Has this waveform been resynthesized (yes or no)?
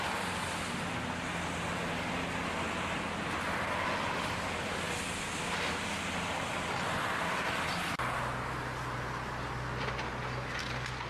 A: no